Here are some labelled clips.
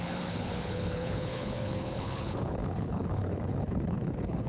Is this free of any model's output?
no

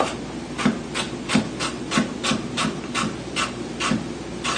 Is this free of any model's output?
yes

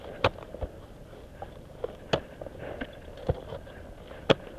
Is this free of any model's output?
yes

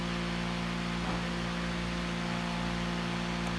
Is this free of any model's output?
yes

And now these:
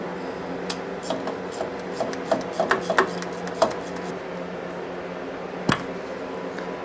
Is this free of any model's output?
yes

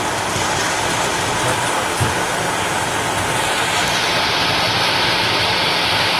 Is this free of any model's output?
yes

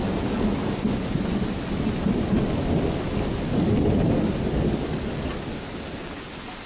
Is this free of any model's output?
yes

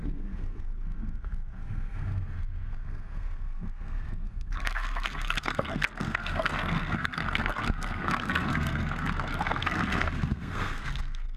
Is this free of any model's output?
no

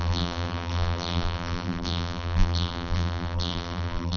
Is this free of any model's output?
no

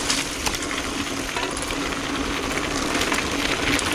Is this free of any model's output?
yes